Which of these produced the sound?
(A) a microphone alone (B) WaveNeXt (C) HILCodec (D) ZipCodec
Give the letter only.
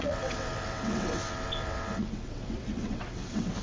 B